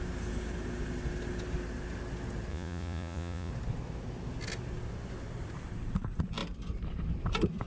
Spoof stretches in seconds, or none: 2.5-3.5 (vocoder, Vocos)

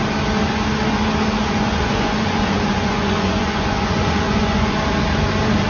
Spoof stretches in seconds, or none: 1.4-4.8 (vocoder, Vocos)

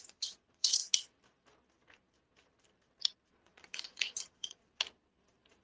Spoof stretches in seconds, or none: 0.0-0.8 (vocoder, Vocos); 3.3-4.6

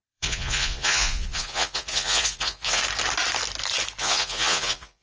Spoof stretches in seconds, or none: 0.0-2.8 (vocoder, Vocos); 4.0-5.0